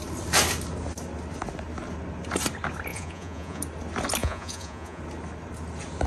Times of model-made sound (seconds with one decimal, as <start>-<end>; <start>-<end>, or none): 2.9-3.6; 4.2-5.0